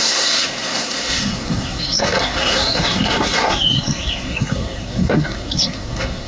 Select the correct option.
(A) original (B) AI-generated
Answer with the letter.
B